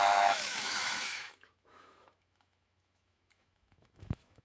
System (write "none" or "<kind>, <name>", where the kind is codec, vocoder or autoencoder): autoencoder, DAC-VAE